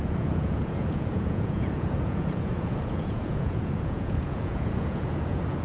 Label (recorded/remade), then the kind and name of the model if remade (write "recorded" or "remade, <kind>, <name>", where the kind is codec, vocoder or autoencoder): remade, vocoder, Vocos